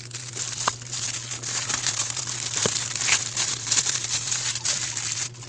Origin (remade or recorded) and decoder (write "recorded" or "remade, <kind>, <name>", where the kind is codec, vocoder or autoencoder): recorded